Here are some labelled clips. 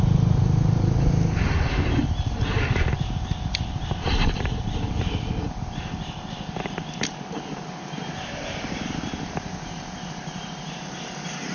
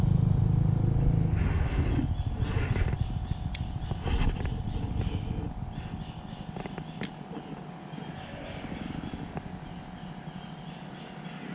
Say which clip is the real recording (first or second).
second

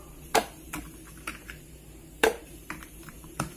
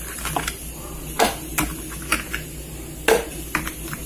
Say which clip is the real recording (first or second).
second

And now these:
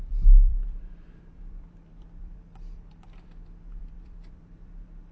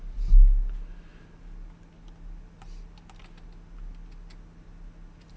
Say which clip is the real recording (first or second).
second